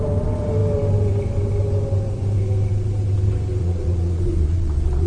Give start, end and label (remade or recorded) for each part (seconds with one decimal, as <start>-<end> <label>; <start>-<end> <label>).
0.0-3.6 recorded; 3.6-5.1 remade